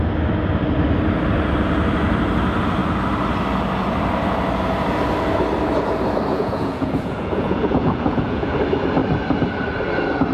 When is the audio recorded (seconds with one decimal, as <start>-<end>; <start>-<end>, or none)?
0.0-6.3; 8.5-10.3